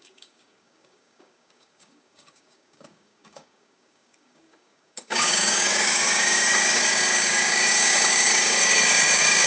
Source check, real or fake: fake